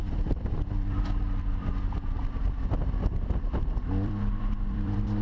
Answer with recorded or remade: remade